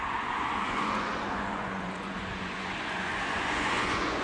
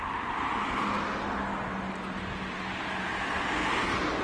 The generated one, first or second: first